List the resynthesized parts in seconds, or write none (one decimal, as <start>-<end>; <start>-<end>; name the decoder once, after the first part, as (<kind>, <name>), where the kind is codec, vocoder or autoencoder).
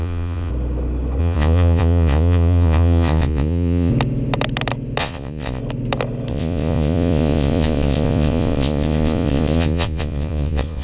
0.0-0.5 (vocoder, Vocos); 1.2-3.9; 5.0-5.6; 6.3-10.8